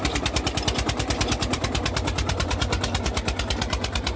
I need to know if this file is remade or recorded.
remade